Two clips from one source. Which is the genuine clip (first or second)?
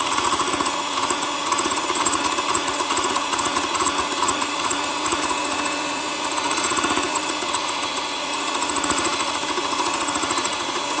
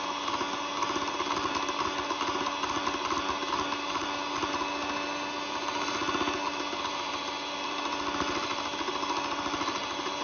second